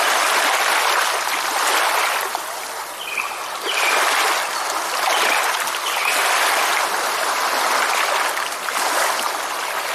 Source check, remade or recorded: recorded